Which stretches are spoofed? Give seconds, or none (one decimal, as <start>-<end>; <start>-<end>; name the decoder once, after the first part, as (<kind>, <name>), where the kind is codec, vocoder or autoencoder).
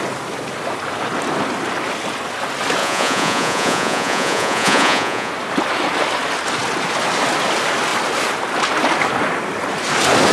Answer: 2.8-5.3 (vocoder, Vocos)